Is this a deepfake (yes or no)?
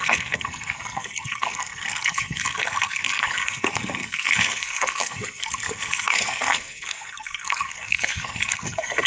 yes